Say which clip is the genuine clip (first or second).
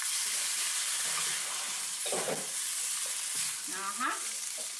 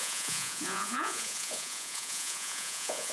first